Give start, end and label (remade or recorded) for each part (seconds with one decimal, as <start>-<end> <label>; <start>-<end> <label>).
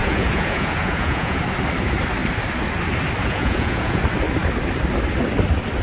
0.0-1.4 remade; 1.4-3.2 recorded; 3.2-4.0 remade; 4.0-5.8 recorded